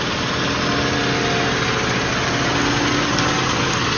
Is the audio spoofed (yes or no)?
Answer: no